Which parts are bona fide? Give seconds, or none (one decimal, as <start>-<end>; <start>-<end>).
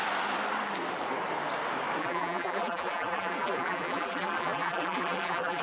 0.0-2.0